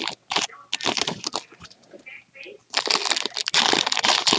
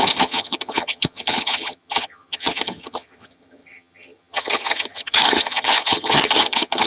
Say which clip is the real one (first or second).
first